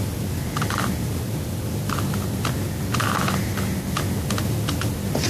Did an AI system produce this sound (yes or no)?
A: no